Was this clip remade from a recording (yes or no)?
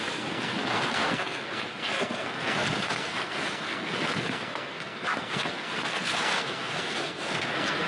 yes